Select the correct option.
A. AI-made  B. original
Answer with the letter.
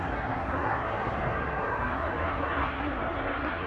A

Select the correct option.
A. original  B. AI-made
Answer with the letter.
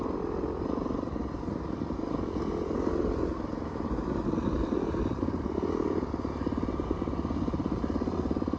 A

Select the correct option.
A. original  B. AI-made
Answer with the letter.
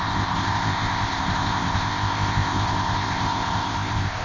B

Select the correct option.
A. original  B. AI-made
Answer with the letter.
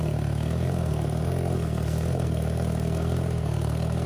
B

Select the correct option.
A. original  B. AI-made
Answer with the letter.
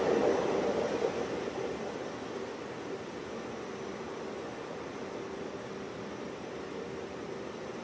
A